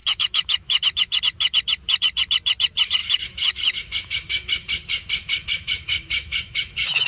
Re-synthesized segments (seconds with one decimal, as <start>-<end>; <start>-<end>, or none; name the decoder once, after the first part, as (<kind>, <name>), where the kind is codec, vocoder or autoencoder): 0.0-1.2 (autoencoder, DAC-VAE); 3.0-7.1